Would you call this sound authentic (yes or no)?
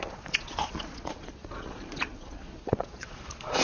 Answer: no